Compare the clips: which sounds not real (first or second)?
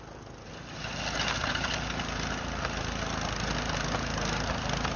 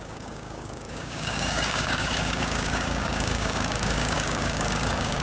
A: second